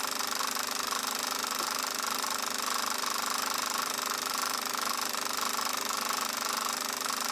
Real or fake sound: real